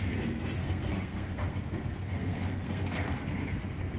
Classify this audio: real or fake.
fake